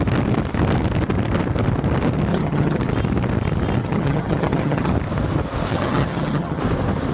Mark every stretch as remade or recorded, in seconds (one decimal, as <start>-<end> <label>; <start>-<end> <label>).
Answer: 0.0-2.3 recorded; 2.3-2.8 remade; 2.8-3.8 recorded; 3.8-4.9 remade; 4.9-5.7 recorded; 5.7-6.6 remade; 6.6-7.1 recorded